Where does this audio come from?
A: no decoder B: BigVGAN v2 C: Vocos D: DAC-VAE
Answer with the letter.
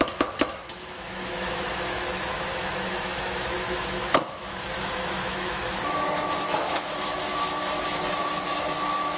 D